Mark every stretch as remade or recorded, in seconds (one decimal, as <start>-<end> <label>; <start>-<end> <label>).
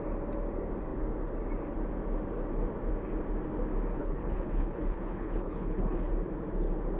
0.0-4.0 recorded; 4.0-6.1 remade; 6.1-7.0 recorded